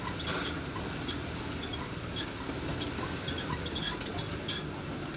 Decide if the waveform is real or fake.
real